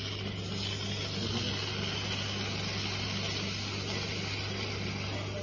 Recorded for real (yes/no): yes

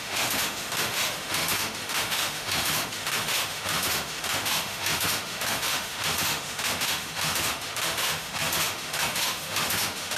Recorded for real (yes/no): no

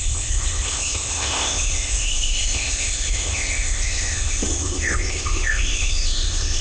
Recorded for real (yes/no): no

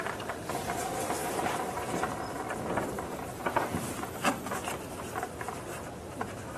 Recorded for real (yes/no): no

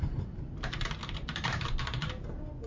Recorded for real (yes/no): yes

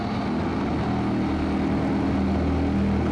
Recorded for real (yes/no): yes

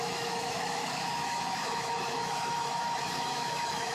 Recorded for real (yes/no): no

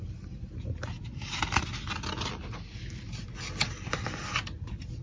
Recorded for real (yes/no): yes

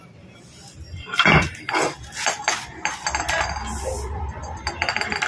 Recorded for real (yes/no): yes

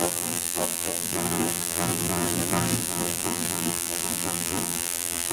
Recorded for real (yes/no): no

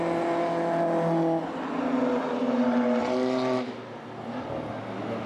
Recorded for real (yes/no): yes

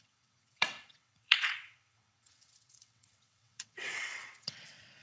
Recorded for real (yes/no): no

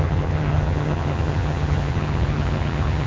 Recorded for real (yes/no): no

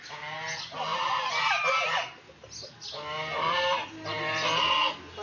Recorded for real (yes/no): yes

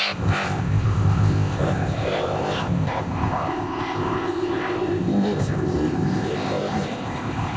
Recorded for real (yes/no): no